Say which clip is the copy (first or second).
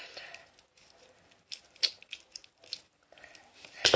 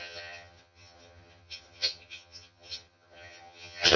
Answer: second